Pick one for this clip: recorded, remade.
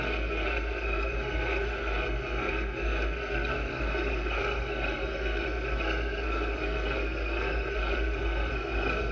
remade